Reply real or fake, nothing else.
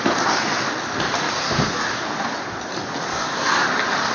fake